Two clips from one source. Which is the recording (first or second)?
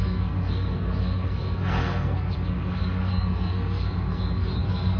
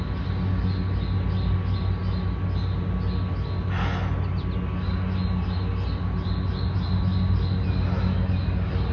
second